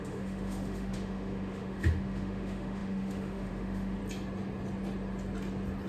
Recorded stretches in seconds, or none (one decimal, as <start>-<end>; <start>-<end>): 4.0-5.9